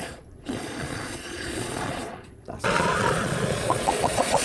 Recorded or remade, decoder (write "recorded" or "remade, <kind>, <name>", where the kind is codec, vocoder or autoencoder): remade, vocoder, Vocos